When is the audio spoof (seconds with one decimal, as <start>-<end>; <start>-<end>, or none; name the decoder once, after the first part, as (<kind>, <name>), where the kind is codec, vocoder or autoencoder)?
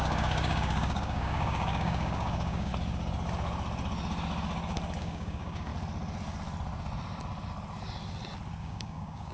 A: 0.0-2.7 (codec, DAC); 5.0-5.7; 8.6-9.3